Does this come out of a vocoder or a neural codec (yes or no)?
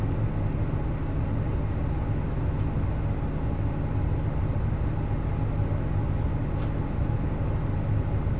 no